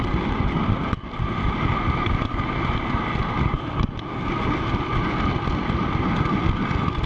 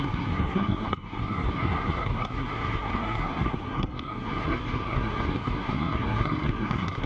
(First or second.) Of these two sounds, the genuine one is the first